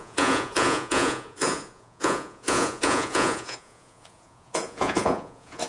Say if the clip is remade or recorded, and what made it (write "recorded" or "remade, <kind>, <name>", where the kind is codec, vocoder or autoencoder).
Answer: remade, vocoder, Vocos